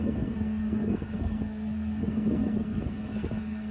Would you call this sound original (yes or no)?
no